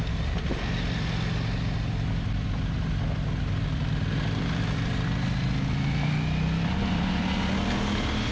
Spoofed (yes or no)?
no